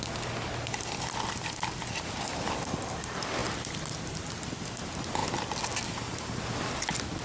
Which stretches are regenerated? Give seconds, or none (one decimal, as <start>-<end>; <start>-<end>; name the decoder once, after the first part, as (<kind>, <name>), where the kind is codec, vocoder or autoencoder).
none